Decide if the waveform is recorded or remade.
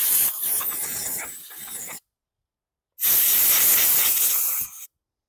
recorded